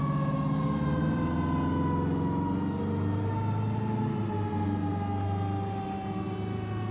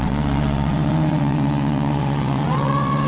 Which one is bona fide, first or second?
first